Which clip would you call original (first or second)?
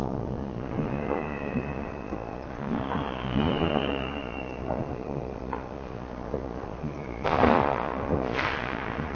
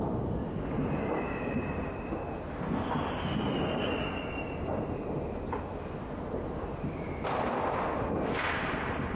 second